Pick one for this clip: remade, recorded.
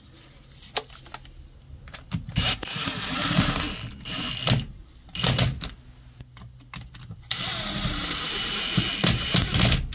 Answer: recorded